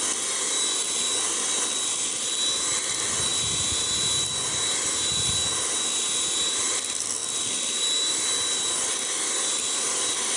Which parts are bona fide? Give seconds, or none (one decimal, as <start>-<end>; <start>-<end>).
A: 0.0-10.4

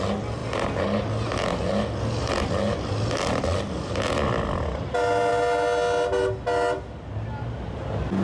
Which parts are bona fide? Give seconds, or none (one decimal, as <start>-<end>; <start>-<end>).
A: 0.0-8.2

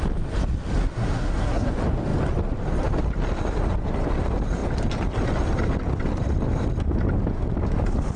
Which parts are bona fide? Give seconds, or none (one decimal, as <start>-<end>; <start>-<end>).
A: 0.0-0.8; 1.7-8.2

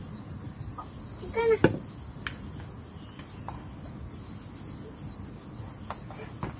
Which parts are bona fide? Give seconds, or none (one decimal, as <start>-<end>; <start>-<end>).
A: 0.0-6.6